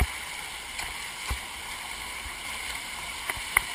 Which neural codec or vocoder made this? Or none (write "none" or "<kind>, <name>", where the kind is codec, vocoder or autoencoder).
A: none